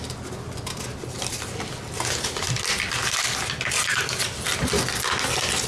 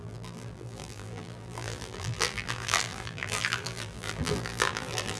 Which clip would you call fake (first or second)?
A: second